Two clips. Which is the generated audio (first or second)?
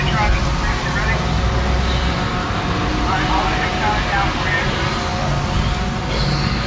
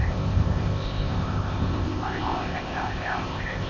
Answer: second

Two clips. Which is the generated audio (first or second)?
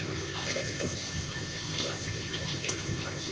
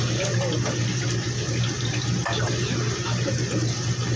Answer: first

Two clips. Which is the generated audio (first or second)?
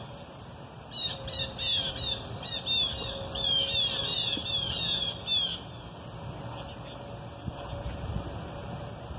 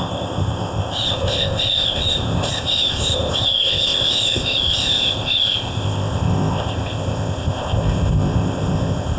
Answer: second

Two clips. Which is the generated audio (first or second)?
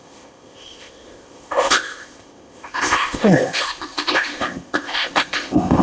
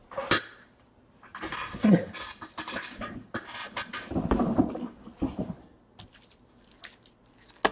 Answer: first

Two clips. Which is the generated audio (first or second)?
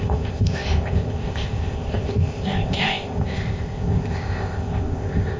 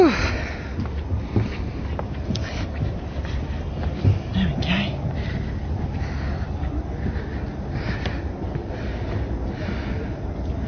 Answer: first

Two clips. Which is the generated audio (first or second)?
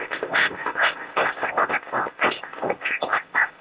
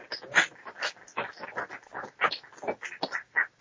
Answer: first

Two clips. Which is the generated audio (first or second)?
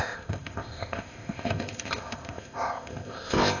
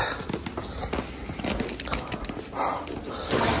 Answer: first